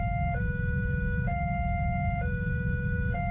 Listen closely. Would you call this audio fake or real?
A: fake